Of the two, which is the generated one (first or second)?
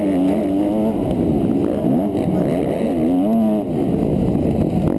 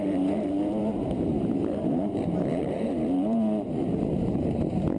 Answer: second